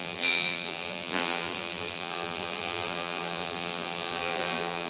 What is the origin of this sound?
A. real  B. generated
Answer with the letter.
B